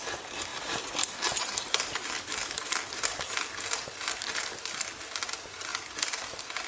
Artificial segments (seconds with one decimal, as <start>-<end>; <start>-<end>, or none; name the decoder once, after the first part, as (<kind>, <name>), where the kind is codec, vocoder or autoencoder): none